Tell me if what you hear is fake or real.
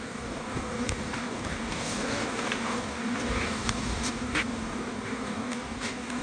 fake